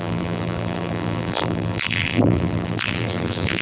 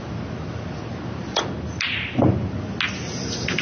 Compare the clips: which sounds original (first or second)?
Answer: second